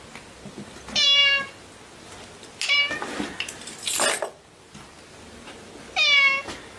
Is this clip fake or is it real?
real